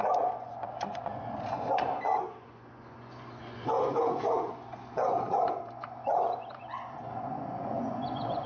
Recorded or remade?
remade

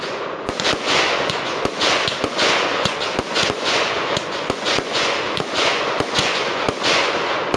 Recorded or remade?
remade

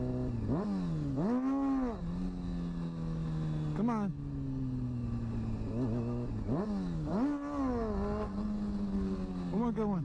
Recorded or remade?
recorded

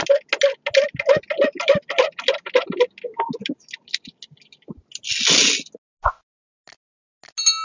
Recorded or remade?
recorded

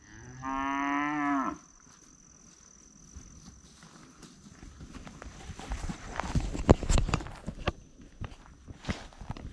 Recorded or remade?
recorded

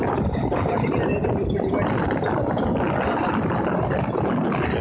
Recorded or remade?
recorded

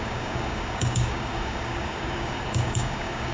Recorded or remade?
remade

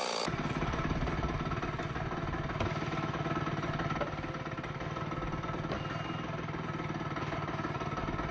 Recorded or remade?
recorded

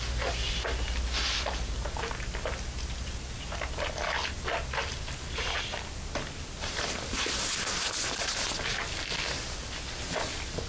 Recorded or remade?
recorded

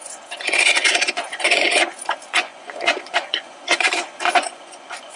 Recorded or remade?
remade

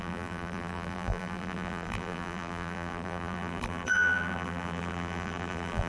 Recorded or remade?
remade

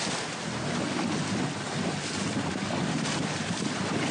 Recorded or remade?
remade